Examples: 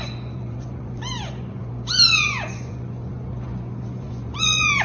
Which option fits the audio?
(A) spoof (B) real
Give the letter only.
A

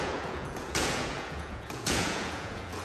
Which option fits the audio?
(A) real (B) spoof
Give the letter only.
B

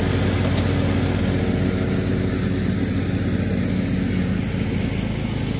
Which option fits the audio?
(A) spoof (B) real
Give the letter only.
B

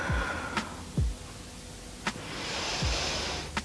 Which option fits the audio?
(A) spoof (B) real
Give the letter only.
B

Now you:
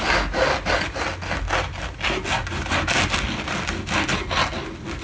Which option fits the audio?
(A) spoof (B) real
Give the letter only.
B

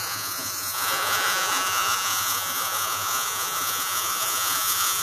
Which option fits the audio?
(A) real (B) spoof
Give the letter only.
B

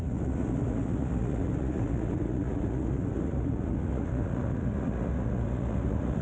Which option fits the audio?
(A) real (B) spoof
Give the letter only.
B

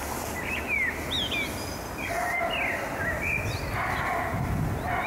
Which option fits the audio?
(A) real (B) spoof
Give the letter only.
A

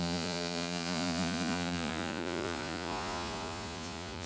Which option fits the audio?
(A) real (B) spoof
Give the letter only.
B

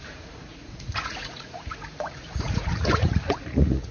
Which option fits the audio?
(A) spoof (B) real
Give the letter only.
A